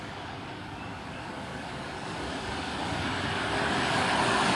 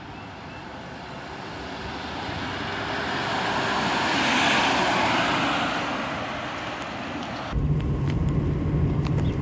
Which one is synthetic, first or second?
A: first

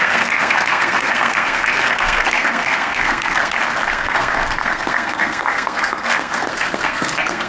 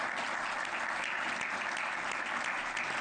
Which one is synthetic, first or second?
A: first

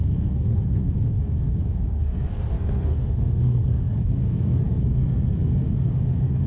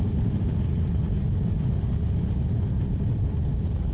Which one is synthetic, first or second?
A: first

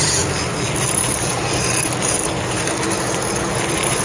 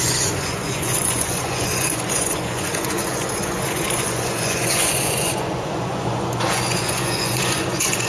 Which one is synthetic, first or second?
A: second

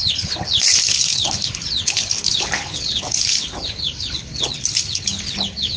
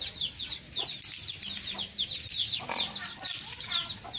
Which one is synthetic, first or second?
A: first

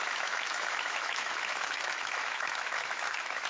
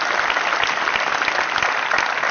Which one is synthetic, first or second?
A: first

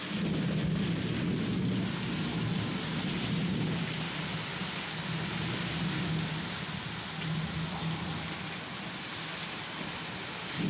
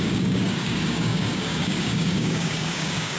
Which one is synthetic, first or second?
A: second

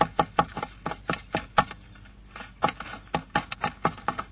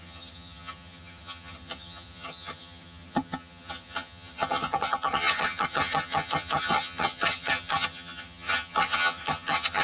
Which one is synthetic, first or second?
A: second